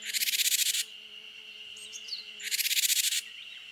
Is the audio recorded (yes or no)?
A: yes